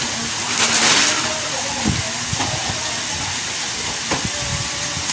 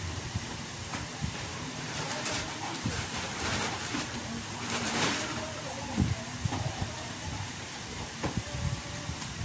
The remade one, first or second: second